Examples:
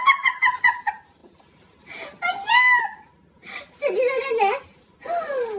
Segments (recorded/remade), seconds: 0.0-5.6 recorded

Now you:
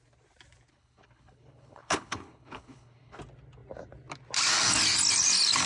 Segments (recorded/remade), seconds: 0.0-0.7 recorded; 0.7-3.2 remade; 3.2-5.6 recorded

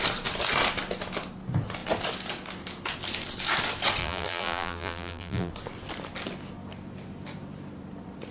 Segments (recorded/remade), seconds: 0.0-4.0 recorded; 4.0-5.5 remade; 5.5-8.3 recorded